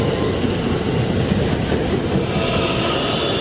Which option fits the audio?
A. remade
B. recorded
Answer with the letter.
B